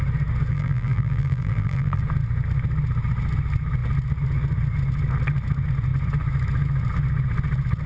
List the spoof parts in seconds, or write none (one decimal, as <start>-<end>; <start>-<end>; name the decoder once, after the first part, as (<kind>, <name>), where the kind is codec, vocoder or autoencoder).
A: 0.5-2.0 (vocoder, BigVGAN v2)